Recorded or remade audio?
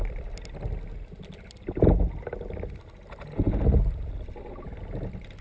recorded